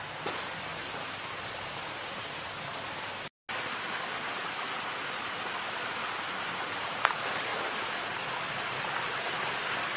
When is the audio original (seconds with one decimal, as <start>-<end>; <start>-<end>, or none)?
0.0-10.0